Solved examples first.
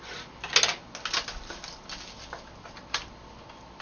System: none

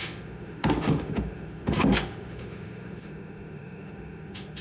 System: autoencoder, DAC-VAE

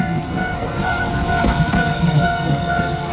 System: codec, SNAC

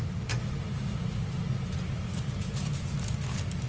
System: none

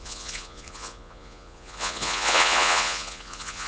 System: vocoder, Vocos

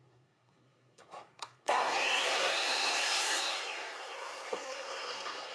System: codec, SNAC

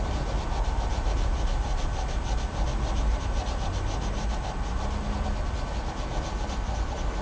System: none